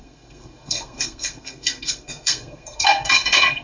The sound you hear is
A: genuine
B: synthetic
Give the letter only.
B